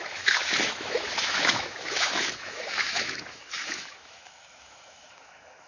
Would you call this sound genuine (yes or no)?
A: no